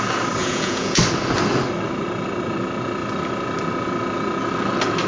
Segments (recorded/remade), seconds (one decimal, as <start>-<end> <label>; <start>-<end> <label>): 0.0-0.4 recorded; 0.4-1.0 remade; 1.0-5.1 recorded